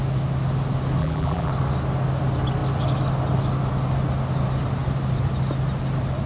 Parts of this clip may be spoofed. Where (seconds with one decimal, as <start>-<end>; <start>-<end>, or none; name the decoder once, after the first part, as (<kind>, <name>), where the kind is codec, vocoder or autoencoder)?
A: 1.0-1.5 (vocoder, BigVGAN v2)